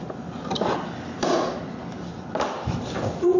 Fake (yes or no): yes